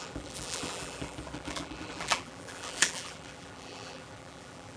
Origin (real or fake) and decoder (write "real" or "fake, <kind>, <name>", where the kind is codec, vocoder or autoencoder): fake, vocoder, BigVGAN v2